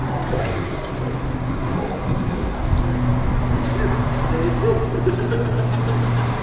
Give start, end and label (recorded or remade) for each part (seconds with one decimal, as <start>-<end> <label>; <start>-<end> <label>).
0.0-0.4 recorded; 0.4-0.9 remade; 0.9-1.5 recorded; 1.5-2.6 remade; 2.6-6.4 recorded